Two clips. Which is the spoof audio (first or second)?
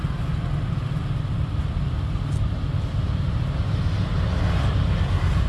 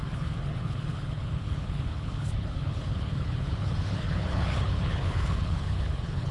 second